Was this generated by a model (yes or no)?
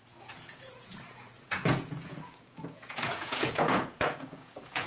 yes